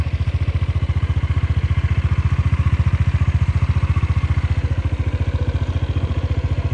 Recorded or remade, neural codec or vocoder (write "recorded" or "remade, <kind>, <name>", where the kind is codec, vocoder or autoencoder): recorded